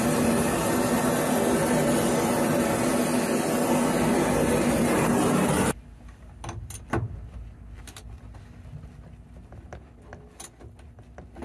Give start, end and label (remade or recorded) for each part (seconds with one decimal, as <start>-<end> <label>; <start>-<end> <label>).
0.0-11.4 recorded